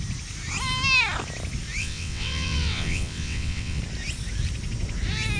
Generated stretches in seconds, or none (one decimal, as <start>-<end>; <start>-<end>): 1.8-3.8